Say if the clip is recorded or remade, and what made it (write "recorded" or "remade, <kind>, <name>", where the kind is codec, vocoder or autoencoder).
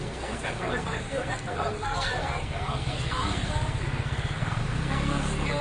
remade, codec, SNAC